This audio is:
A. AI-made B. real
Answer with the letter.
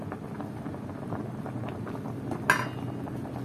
B